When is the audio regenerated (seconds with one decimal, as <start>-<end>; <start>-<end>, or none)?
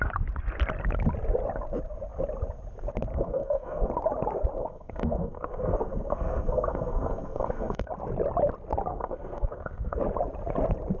3.1-3.9; 4.6-7.9; 8.9-10.0